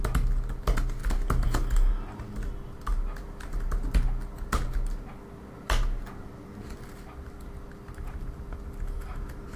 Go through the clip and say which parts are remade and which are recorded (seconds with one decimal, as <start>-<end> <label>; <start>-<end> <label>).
0.0-9.6 recorded